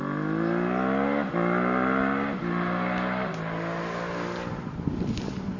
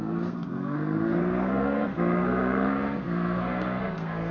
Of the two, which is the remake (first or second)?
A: second